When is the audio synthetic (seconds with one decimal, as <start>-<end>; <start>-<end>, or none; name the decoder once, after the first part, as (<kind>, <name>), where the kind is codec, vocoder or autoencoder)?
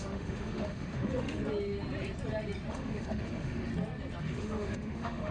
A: 0.0-1.4 (autoencoder, DAC-VAE); 2.7-3.7; 4.2-5.3